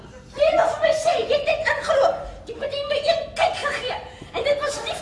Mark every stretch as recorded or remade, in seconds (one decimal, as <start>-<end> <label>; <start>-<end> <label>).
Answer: 0.0-1.1 recorded; 1.1-2.9 remade; 2.9-3.6 recorded; 3.6-4.3 remade; 4.3-5.0 recorded